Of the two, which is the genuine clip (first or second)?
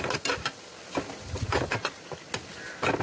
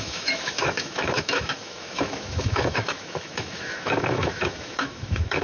first